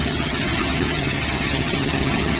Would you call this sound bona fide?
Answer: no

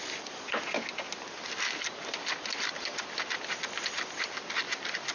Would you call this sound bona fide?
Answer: yes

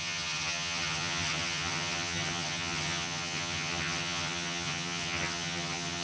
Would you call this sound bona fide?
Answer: no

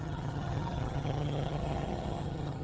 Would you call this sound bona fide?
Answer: no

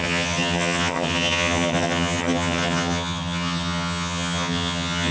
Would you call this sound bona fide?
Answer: no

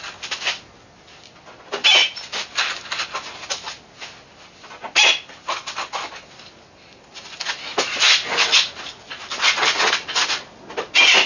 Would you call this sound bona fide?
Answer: yes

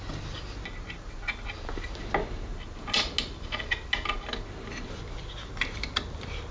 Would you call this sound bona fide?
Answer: yes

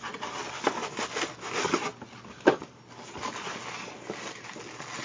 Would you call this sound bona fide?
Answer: yes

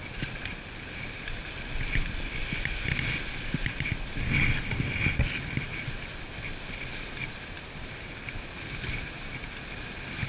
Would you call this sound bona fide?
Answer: yes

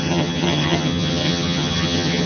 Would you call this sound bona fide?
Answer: no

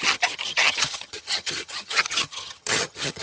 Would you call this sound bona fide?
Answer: no